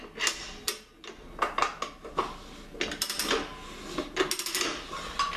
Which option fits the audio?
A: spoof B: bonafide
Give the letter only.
B